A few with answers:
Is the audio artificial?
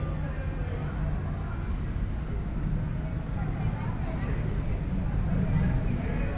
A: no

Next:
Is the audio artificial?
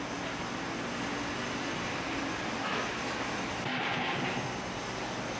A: no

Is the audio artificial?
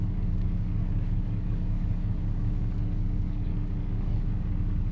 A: yes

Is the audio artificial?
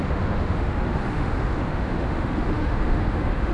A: yes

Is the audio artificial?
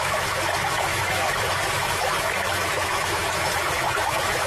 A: yes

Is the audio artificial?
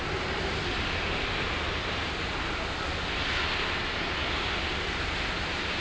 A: no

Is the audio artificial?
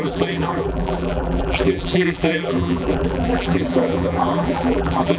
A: yes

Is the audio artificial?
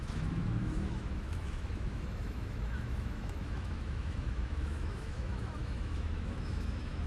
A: yes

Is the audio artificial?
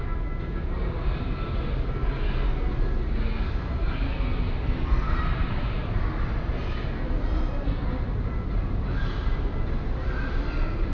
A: no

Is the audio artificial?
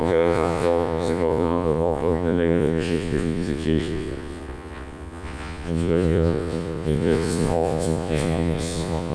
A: yes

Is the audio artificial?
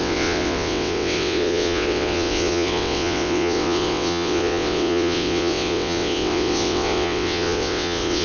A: yes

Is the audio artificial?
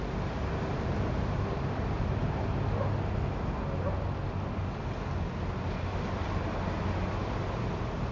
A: no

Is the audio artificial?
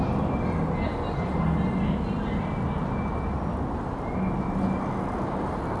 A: no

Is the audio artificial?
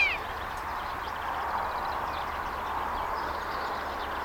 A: no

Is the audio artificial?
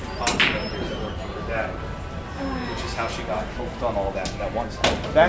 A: no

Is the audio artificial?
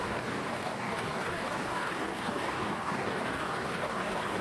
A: yes